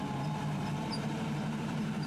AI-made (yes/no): yes